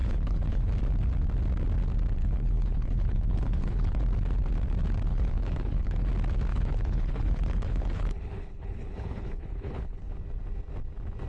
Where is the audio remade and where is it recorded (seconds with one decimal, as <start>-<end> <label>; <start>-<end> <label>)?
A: 0.0-0.7 remade; 0.7-2.2 recorded; 2.2-4.0 remade; 4.0-5.1 recorded; 5.1-6.1 remade; 6.1-6.5 recorded; 6.5-10.1 remade; 10.1-11.3 recorded